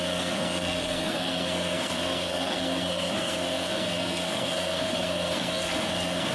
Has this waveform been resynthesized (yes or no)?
yes